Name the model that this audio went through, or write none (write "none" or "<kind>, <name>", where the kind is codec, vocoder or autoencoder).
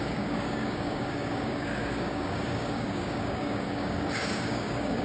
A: codec, DAC